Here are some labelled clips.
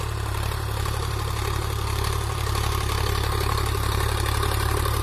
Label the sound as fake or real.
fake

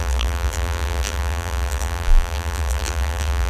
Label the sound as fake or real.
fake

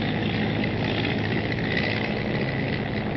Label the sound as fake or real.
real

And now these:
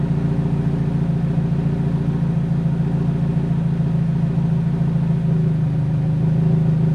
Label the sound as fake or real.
real